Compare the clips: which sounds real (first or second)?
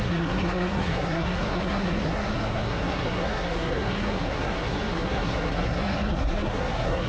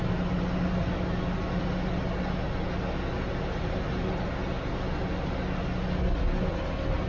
second